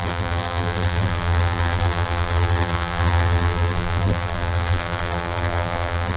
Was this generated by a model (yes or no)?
yes